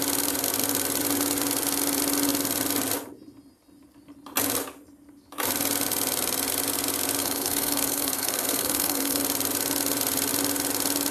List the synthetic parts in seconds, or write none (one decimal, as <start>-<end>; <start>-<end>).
7.2-9.2